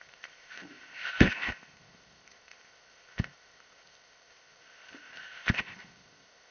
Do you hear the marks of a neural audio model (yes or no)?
yes